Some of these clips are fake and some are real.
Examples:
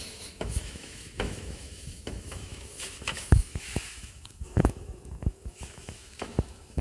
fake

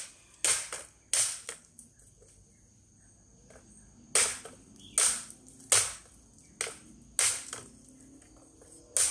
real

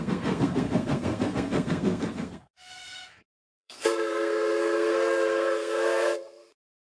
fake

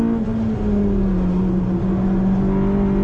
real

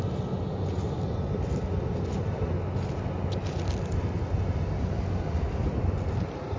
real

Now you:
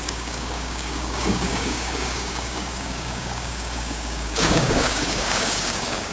fake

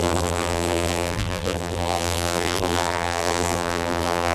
fake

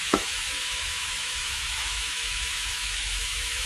fake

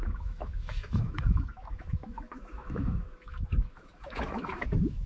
fake